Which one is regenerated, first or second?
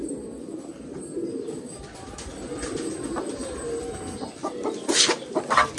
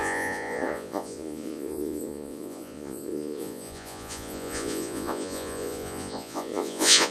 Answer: second